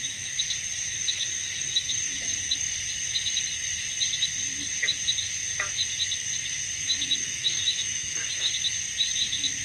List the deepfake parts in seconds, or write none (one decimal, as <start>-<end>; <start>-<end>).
1.0-2.1; 7.2-8.5